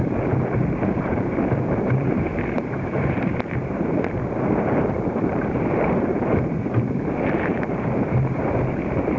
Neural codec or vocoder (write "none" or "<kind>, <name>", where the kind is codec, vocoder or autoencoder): vocoder, BigVGAN v2